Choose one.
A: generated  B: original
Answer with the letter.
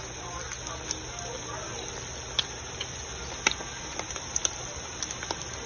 B